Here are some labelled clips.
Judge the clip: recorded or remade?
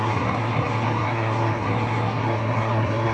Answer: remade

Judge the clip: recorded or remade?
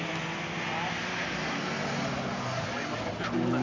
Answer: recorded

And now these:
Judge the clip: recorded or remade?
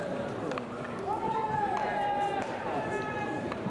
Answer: remade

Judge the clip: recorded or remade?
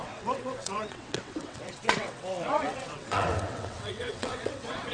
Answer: remade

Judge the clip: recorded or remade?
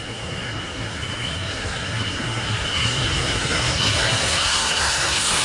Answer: remade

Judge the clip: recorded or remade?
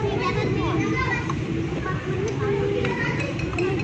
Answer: recorded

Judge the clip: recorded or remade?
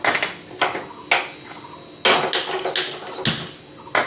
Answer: recorded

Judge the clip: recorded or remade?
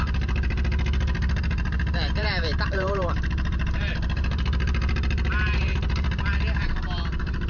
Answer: remade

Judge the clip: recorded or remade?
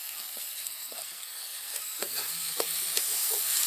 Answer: remade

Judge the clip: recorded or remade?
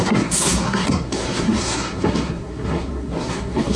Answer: remade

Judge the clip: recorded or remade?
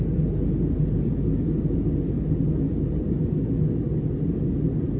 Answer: recorded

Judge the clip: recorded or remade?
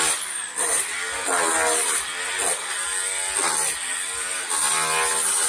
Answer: recorded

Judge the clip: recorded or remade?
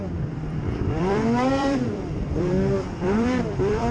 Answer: remade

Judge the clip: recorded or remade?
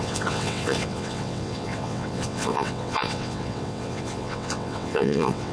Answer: remade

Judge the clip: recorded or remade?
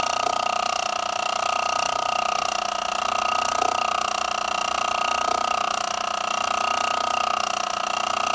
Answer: recorded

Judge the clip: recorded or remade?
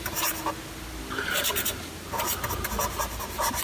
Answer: recorded